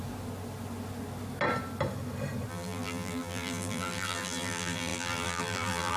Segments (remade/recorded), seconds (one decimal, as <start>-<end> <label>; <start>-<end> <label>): 0.0-2.5 recorded; 2.5-6.0 remade

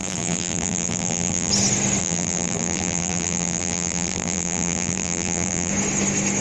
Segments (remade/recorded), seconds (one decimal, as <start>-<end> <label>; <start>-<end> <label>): 0.0-1.5 remade; 1.5-2.0 recorded; 2.0-5.7 remade; 5.7-6.4 recorded

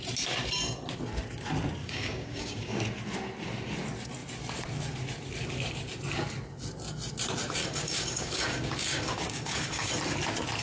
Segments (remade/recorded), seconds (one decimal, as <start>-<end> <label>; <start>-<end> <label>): 0.0-1.8 recorded; 1.8-2.8 remade; 2.8-7.6 recorded; 7.6-9.9 remade; 9.9-10.6 recorded

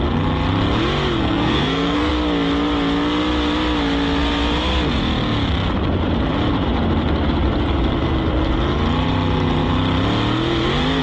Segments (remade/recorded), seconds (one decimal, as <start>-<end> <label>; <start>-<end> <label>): 0.0-1.2 recorded; 1.2-2.1 remade; 2.1-11.0 recorded

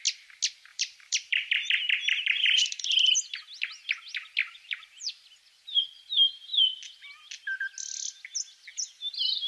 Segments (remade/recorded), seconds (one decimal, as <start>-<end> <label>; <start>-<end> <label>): 0.0-0.7 recorded; 0.7-2.8 remade; 2.8-4.4 recorded; 4.4-5.1 remade; 5.1-9.5 recorded

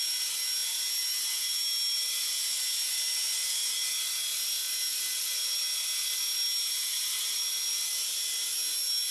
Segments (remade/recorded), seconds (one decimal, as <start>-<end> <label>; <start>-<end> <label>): 0.0-9.1 recorded

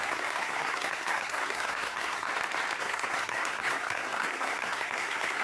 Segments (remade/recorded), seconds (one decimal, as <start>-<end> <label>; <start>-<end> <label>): 0.0-2.3 remade; 2.3-2.8 recorded; 2.8-5.4 remade